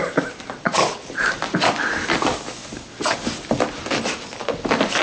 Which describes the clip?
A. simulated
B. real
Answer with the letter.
B